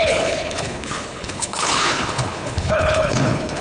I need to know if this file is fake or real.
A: fake